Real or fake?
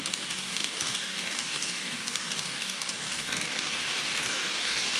fake